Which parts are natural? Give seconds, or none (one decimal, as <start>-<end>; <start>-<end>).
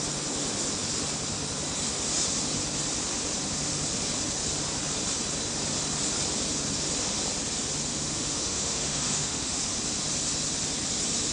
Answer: 0.0-7.9; 9.6-11.3